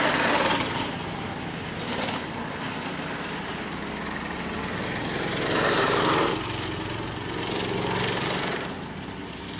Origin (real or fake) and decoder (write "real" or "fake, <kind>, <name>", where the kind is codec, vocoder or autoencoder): real